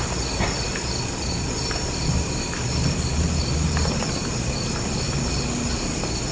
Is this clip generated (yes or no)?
no